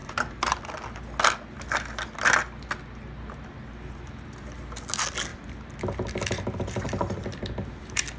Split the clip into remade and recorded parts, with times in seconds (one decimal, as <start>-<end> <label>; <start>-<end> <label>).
0.0-0.6 remade; 0.6-8.2 recorded